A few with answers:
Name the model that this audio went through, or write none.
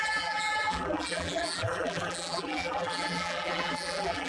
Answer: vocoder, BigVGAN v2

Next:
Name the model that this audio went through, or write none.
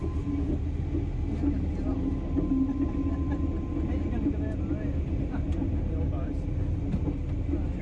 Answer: none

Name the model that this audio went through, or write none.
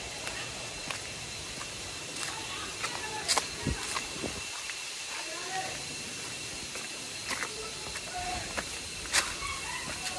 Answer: none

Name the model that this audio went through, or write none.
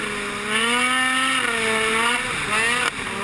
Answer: none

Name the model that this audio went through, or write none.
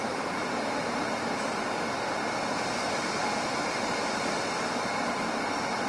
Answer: vocoder, BigVGAN v2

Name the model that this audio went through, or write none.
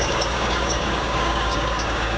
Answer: codec, DAC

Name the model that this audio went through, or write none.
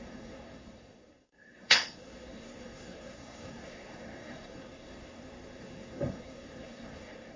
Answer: codec, SNAC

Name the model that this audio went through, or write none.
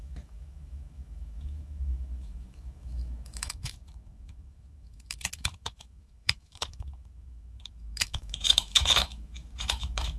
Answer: autoencoder, DAC-VAE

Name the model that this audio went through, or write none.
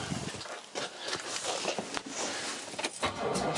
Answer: none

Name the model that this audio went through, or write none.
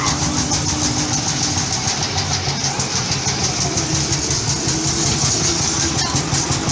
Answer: none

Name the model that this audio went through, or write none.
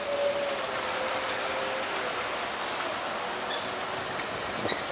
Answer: none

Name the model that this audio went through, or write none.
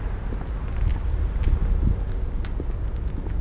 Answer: none